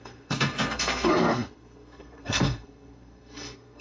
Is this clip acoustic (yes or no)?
no